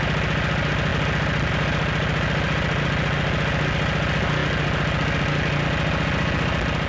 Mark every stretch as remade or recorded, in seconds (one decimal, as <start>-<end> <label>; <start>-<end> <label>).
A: 0.0-6.9 recorded